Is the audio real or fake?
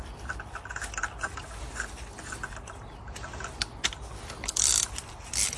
real